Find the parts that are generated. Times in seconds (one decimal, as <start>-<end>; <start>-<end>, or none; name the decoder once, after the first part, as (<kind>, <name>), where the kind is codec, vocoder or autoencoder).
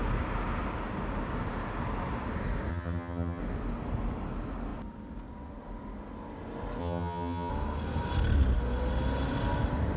2.7-3.4 (vocoder, HiFi-GAN); 6.8-7.5